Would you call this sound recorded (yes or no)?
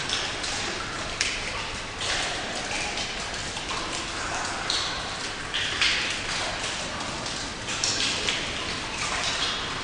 yes